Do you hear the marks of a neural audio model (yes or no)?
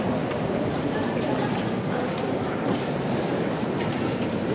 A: yes